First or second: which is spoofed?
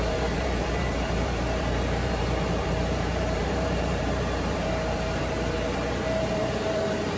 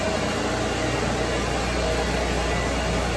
first